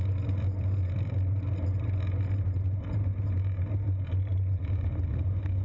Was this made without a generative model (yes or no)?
yes